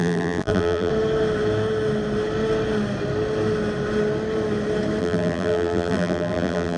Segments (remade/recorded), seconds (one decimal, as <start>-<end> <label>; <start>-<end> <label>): 0.0-0.9 remade; 0.9-5.0 recorded; 5.0-6.8 remade